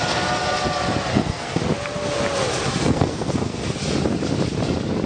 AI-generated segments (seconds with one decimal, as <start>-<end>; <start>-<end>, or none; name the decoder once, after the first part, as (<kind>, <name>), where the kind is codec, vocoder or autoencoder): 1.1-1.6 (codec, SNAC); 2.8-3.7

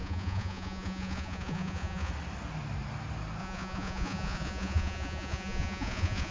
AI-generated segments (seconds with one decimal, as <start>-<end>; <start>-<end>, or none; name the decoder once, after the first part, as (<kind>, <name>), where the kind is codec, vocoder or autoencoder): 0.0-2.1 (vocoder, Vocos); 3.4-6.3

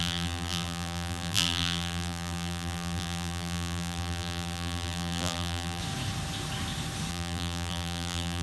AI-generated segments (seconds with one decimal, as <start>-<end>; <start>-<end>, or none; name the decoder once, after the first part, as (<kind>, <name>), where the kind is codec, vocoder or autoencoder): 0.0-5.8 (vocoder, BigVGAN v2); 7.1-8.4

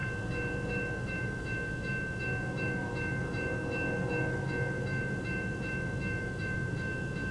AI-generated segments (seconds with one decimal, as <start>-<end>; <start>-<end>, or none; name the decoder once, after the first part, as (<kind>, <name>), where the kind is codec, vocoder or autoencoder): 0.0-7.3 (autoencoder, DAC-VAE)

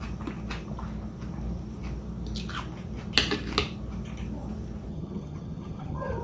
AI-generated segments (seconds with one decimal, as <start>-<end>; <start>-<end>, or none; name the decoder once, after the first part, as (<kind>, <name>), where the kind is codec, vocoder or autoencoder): 4.9-6.2 (vocoder, HiFi-GAN)

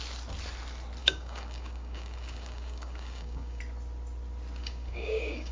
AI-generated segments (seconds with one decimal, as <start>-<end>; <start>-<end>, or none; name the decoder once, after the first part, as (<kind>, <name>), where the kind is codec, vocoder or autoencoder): 1.0-3.6 (codec, DAC); 4.6-5.5